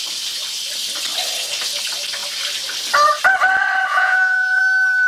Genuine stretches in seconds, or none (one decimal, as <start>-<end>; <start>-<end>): 0.0-3.9; 4.6-5.1